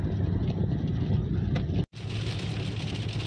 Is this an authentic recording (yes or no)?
yes